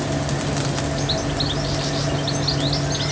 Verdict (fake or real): real